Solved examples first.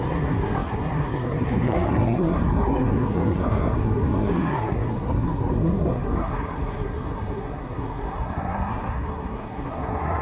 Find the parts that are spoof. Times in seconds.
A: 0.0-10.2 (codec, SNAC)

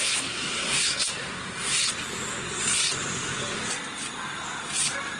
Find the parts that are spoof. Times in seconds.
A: 0.0-1.8 (codec, SNAC)

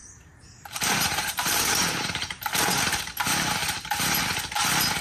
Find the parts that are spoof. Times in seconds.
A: 0.0-3.0 (vocoder, BigVGAN v2); 3.6-4.2

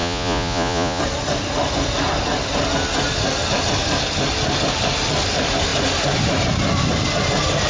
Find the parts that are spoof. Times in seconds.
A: 0.0-1.0 (vocoder, Vocos)